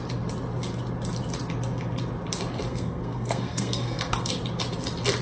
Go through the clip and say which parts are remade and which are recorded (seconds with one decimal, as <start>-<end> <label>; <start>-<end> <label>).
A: 0.0-2.7 recorded; 2.7-4.3 remade; 4.3-5.2 recorded